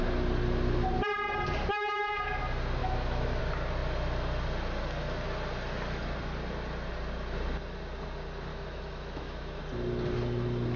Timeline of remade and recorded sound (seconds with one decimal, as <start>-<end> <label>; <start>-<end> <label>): 0.0-1.7 recorded; 1.7-2.4 remade; 2.4-2.8 recorded; 2.8-3.4 remade; 3.4-8.5 recorded; 8.5-9.6 remade; 9.6-10.8 recorded